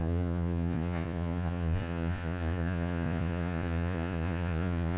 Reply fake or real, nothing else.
fake